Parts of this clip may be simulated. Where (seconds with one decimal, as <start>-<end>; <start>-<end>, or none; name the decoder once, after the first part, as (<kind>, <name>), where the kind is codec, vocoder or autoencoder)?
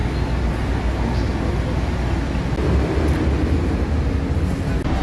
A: none